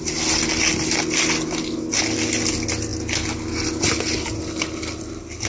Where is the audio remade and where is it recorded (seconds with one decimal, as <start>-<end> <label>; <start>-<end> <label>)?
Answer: 0.0-5.5 recorded